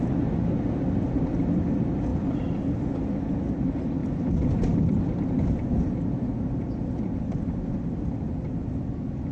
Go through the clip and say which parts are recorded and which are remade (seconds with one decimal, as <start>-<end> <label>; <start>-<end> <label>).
0.0-4.0 recorded; 4.0-9.3 remade